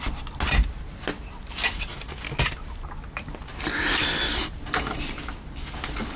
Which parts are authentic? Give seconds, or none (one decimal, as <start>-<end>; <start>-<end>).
0.0-3.4; 5.1-6.2